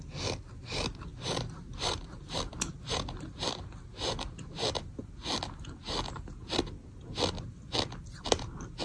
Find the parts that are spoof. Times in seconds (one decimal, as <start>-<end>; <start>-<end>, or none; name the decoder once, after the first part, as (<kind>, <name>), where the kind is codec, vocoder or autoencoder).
none